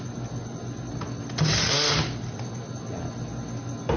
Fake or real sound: real